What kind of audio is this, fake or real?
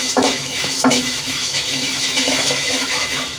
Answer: fake